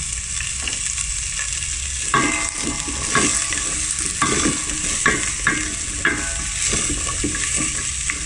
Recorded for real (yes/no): yes